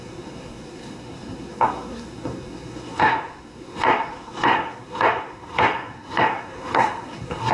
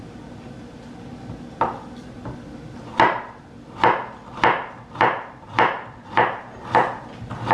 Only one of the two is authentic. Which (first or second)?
second